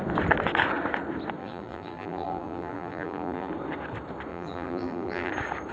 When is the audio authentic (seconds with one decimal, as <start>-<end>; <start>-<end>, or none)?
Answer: 0.0-1.4; 3.5-4.3; 5.3-5.7